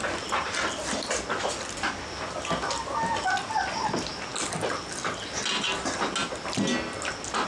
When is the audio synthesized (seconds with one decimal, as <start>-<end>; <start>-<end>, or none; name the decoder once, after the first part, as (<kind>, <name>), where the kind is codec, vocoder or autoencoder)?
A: none